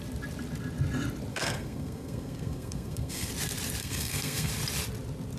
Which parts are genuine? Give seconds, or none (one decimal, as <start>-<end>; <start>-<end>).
0.0-1.3; 3.3-3.8; 4.5-5.4